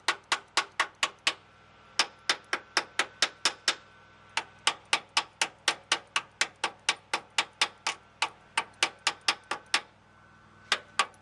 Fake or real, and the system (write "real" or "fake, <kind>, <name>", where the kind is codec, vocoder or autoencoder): real